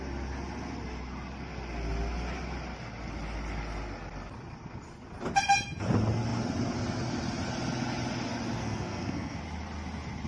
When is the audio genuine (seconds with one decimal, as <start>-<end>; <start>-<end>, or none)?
0.0-8.6; 9.4-10.3